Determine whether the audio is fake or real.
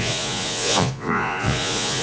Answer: fake